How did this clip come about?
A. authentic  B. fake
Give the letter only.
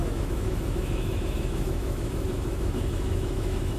B